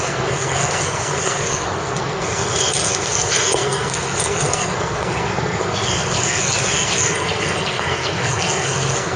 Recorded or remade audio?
remade